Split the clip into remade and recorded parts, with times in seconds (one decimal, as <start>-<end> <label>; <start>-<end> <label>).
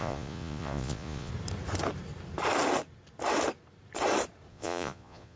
0.0-1.3 remade; 1.3-4.5 recorded; 4.5-5.4 remade